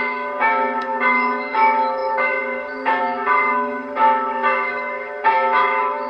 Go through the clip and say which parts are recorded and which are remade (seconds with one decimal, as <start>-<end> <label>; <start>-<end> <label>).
0.0-6.1 remade